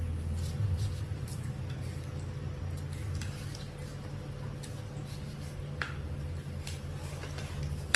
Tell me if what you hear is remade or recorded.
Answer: recorded